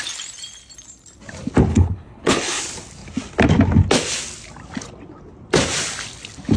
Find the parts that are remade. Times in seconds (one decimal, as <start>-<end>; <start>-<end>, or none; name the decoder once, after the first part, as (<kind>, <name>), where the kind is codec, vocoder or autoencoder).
1.7-2.6 (codec, HILCodec)